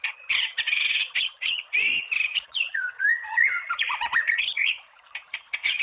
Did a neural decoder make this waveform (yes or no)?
yes